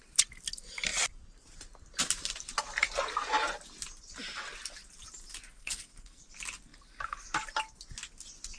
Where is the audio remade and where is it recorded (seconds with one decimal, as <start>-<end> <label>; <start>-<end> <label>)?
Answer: 0.0-5.6 recorded; 5.6-6.2 remade; 6.2-8.6 recorded